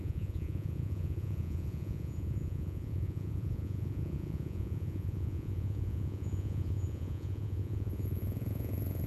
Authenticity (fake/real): fake